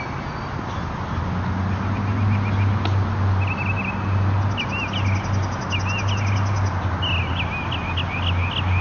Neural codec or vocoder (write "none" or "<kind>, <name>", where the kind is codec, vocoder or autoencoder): none